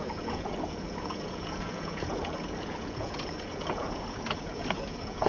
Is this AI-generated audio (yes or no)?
yes